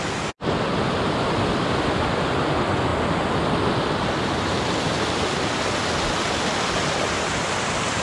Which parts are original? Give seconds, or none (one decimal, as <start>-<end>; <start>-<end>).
0.0-8.0